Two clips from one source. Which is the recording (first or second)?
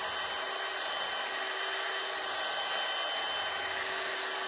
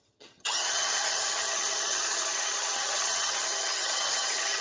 first